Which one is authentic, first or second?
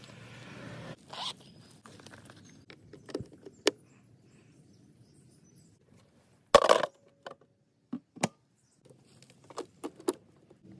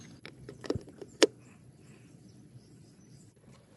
first